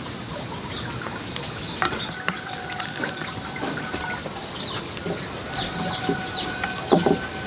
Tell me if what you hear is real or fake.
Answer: real